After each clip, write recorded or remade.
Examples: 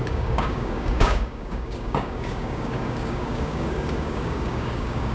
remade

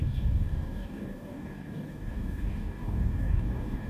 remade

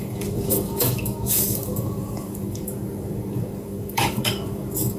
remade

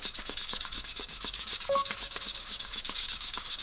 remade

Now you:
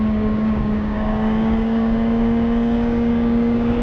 remade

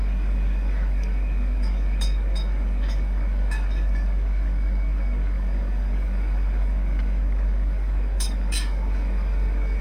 remade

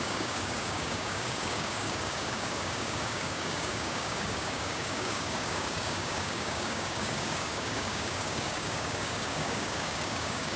remade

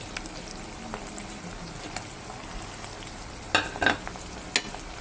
recorded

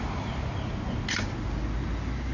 recorded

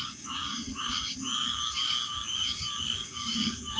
remade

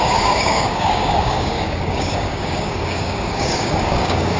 remade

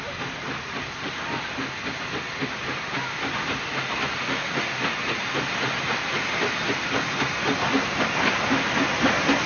recorded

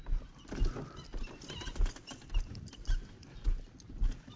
recorded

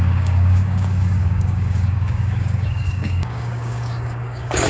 remade